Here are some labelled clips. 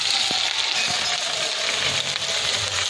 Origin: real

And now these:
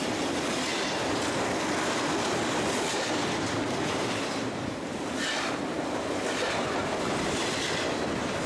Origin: real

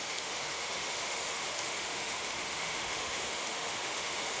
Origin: fake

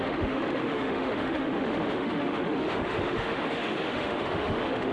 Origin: fake